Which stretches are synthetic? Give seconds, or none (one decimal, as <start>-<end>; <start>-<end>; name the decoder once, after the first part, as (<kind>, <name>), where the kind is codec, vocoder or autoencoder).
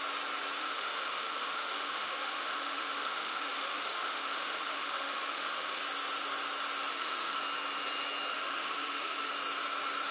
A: 0.6-5.8 (autoencoder, DAC-VAE); 6.9-7.4; 8.3-9.3